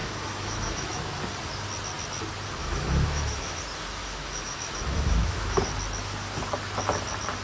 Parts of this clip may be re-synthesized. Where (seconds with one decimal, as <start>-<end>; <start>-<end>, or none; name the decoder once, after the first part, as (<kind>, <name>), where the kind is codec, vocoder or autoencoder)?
0.0-1.1 (autoencoder, DAC-VAE); 2.6-3.6; 4.0-5.6